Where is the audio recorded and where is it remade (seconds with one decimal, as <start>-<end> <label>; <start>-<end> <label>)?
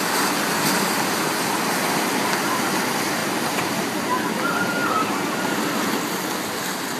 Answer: 0.0-3.2 recorded; 3.2-3.9 remade; 3.9-7.0 recorded